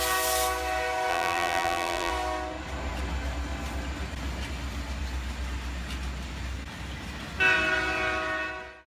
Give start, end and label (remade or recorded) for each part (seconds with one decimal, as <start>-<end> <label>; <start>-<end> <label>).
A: 0.0-1.1 recorded; 1.1-2.1 remade; 2.1-8.9 recorded